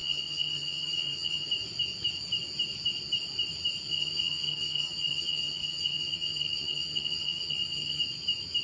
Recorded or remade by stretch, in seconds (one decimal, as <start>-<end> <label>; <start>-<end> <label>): 0.0-1.5 remade; 1.5-3.9 recorded; 3.9-8.0 remade; 8.0-8.6 recorded